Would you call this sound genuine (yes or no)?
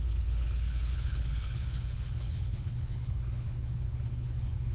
no